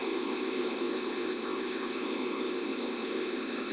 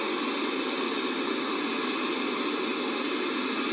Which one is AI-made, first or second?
first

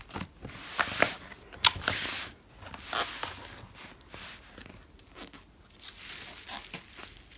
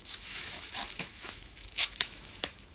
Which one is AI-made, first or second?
second